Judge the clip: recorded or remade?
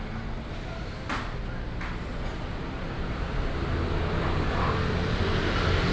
recorded